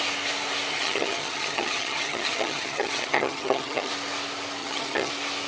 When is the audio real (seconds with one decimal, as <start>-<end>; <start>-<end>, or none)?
0.0-0.7; 3.9-4.6; 5.1-5.5